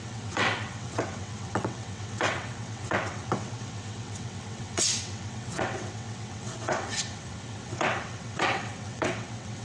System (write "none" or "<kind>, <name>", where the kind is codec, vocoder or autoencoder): vocoder, WaveNeXt